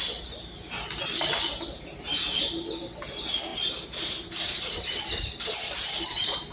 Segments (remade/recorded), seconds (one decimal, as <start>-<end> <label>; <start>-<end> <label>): 0.0-6.5 recorded

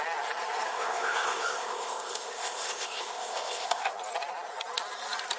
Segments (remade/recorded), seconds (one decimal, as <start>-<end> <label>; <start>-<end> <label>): 0.0-0.7 recorded; 0.7-3.9 remade; 3.9-5.4 recorded